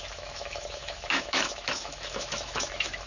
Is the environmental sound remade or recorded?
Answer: remade